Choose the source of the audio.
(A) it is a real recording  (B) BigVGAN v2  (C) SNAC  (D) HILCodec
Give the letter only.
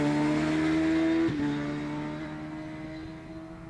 A